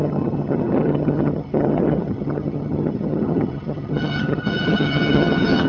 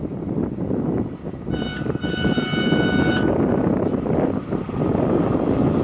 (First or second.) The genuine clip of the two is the second